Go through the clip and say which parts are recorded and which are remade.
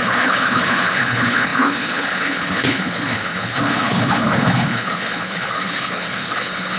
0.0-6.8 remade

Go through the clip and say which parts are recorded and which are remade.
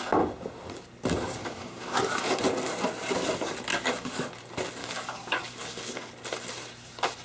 0.0-1.4 recorded; 1.4-2.4 remade; 2.4-3.7 recorded; 3.7-4.3 remade; 4.3-4.8 recorded; 4.8-6.1 remade; 6.1-7.2 recorded